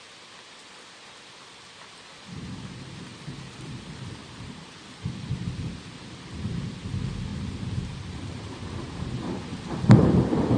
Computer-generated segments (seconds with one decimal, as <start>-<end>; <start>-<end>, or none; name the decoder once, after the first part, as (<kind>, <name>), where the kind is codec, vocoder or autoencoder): 4.2-4.7 (vocoder, BigVGAN v2); 7.3-9.1